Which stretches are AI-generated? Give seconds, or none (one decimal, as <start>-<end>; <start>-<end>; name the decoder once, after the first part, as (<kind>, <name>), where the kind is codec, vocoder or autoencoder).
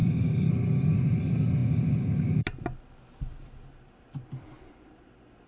0.0-0.5 (codec, DAC)